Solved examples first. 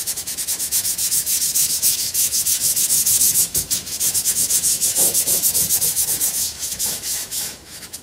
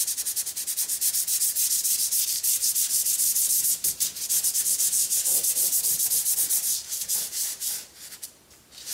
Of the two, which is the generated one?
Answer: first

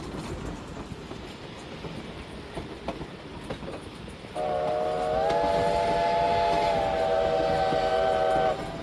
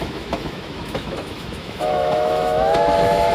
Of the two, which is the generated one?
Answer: second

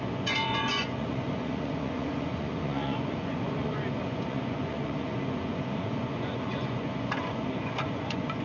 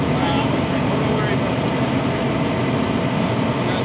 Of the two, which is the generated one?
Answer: first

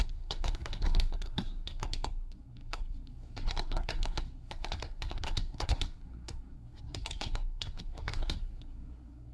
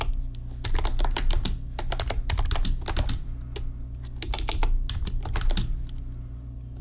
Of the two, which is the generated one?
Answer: first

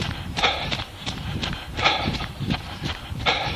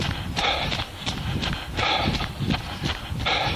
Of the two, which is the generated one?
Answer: first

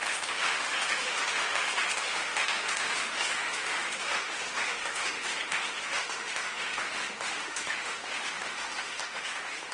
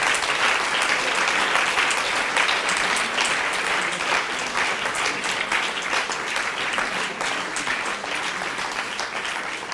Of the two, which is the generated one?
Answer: first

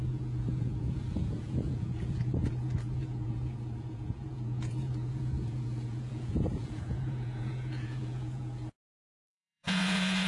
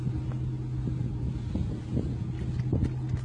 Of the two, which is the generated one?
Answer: first